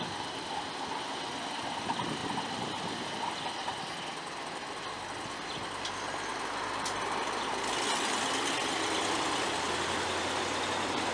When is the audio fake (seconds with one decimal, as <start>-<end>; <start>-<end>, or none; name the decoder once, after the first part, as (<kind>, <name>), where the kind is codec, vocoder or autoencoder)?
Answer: none